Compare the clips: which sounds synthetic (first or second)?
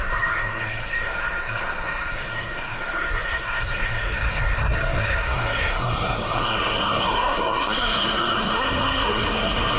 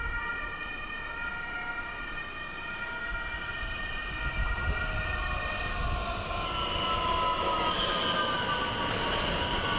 first